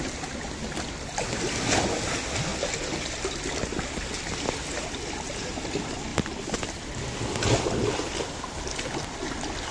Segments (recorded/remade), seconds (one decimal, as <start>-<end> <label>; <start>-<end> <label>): 0.0-9.7 recorded